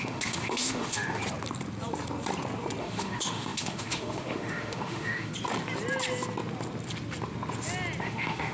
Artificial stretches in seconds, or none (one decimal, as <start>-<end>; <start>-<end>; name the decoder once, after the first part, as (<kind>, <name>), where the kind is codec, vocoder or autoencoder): 0.0-1.2 (autoencoder, DAC-VAE); 2.8-5.3; 8.0-8.5

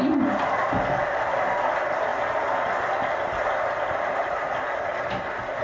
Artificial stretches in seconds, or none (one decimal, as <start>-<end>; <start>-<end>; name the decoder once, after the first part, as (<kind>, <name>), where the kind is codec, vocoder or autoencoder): none